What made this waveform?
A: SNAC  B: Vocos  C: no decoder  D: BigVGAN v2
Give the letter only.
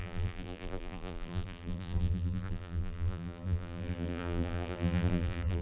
D